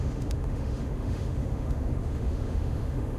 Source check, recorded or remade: remade